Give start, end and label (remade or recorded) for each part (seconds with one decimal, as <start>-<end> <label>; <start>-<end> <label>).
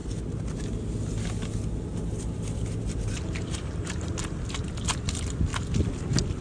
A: 0.0-1.9 recorded; 1.9-4.7 remade; 4.7-6.4 recorded